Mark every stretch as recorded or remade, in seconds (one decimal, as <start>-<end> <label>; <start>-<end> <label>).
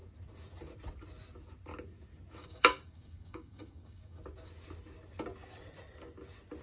0.0-2.4 recorded; 2.4-4.2 remade; 4.2-6.6 recorded